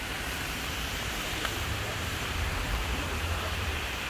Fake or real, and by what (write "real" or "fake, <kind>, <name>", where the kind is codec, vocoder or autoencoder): fake, vocoder, BigVGAN v2